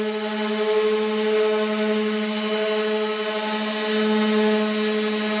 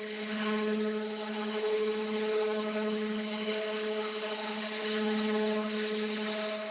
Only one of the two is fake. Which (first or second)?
second